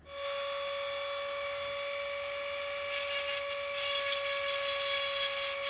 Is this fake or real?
real